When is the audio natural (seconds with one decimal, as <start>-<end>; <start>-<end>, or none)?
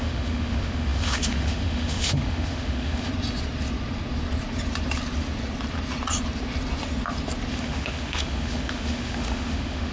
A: 3.1-7.5